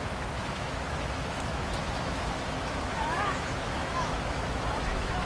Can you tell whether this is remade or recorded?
remade